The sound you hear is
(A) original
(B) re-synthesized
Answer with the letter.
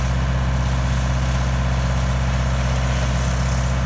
A